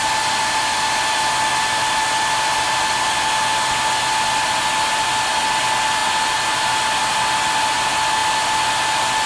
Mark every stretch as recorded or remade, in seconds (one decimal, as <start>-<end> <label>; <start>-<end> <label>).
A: 0.0-9.3 recorded